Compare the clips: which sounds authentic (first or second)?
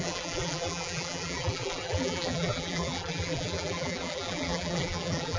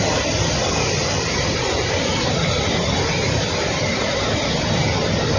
second